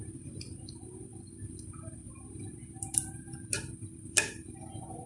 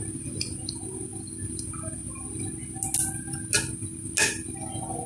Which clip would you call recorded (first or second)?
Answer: second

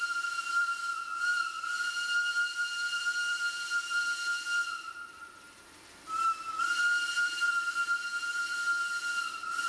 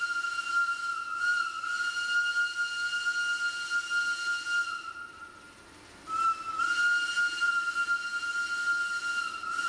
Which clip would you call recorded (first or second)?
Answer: second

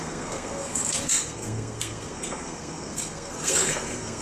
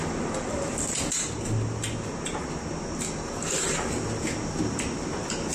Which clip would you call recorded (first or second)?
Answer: second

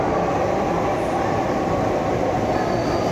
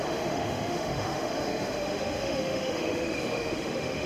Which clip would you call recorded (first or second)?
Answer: first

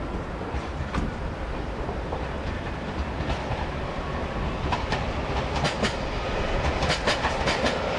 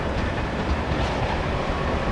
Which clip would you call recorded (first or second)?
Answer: first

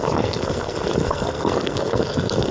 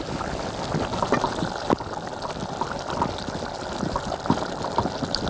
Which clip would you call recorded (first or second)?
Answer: second